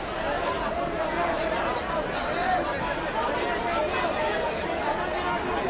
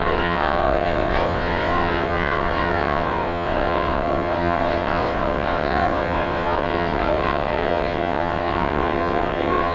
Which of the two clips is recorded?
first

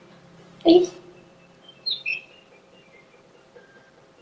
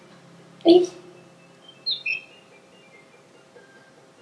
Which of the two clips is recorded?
second